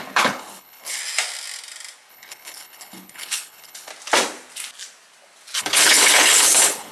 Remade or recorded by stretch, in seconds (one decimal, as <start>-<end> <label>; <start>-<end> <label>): 0.0-1.0 remade; 1.0-2.1 recorded; 2.1-3.9 remade; 3.9-5.6 recorded; 5.6-6.9 remade